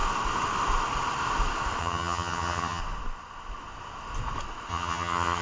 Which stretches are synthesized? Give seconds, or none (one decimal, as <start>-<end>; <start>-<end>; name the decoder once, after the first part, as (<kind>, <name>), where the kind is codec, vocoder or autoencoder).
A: 1.8-2.8 (vocoder, HiFi-GAN); 4.7-5.4